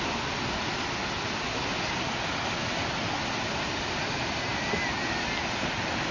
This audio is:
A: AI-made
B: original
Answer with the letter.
B